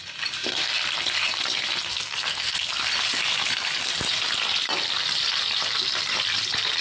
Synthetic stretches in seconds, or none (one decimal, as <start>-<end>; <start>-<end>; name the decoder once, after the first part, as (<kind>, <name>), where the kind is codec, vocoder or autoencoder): 1.9-2.7 (codec, SNAC)